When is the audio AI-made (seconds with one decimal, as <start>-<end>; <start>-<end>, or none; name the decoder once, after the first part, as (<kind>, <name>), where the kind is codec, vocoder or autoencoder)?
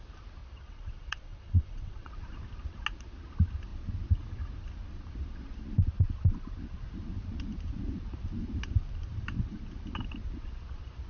0.4-2.1 (vocoder, WaveNeXt)